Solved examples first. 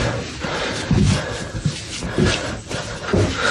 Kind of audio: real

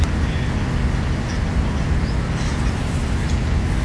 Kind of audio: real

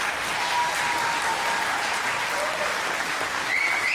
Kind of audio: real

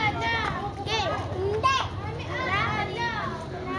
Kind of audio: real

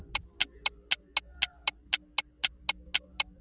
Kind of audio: real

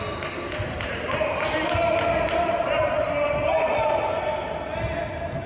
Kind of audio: real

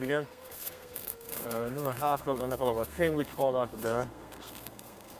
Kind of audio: fake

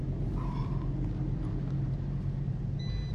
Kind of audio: real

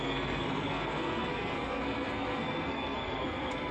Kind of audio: fake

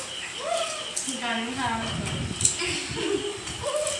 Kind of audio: real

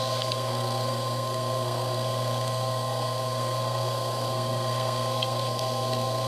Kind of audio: fake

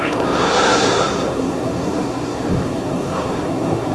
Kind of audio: fake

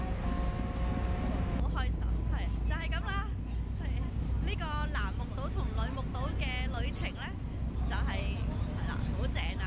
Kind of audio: real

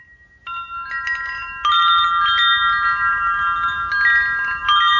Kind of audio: real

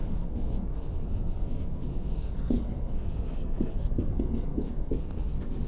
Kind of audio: fake